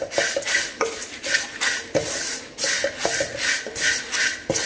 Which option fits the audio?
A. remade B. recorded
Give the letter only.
B